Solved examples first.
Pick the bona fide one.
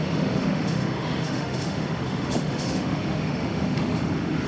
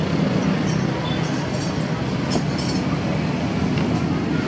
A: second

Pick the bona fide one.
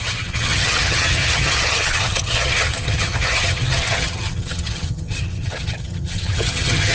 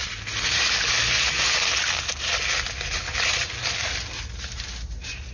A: second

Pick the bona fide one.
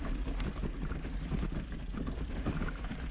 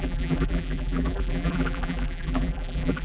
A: first